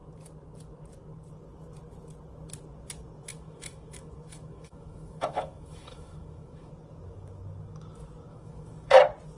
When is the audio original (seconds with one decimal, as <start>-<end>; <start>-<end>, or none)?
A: 0.0-3.3; 6.7-8.3; 9.0-9.4